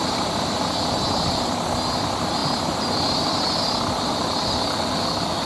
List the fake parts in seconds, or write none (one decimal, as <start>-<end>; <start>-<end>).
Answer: 2.4-3.6